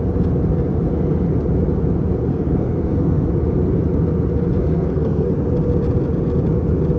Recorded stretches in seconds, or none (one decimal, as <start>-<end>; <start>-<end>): 0.0-2.3; 3.3-4.6; 5.3-7.0